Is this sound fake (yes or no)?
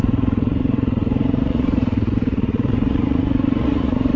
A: yes